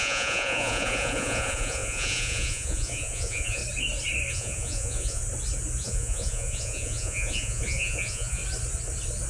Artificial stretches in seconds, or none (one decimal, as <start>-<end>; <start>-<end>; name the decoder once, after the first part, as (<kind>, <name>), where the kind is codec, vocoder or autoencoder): 0.0-3.6 (vocoder, Vocos); 4.3-5.2; 5.8-8.4